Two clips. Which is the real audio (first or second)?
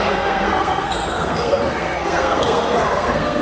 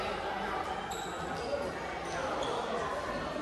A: second